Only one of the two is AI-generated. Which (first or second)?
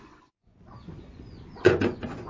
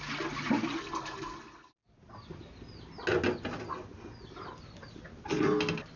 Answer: first